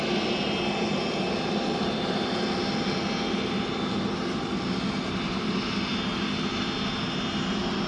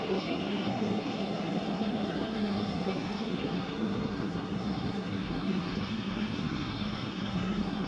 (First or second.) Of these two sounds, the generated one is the second